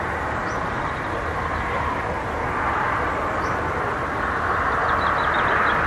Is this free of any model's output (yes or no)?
yes